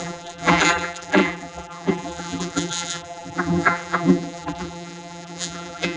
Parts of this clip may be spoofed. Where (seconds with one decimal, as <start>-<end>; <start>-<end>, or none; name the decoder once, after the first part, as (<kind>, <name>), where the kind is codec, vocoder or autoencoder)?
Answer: 0.0-6.0 (vocoder, BigVGAN v2)